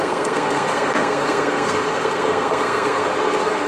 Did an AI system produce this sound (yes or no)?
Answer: yes